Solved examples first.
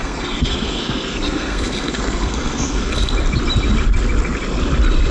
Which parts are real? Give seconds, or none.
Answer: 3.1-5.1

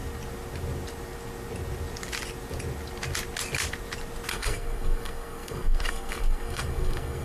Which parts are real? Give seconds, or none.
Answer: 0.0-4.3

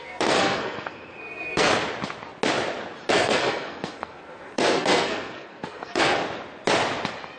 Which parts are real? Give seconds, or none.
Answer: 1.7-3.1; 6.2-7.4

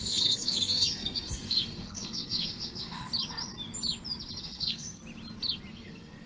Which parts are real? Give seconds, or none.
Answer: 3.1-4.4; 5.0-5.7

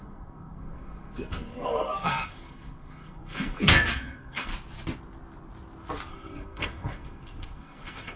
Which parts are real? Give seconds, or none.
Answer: 4.5-6.1

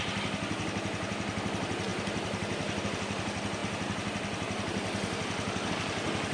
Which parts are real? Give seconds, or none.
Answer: 0.0-6.3

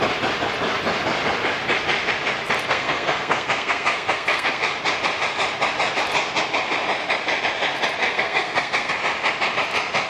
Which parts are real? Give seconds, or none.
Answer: 0.0-2.7; 4.6-8.0; 8.9-10.1